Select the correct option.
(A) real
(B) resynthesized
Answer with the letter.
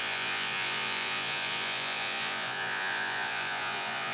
B